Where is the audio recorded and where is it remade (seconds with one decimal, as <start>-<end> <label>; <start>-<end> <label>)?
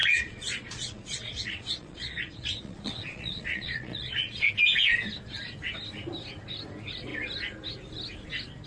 0.0-4.5 remade; 4.5-8.7 recorded